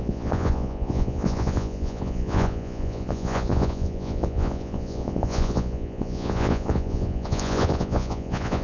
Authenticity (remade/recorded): remade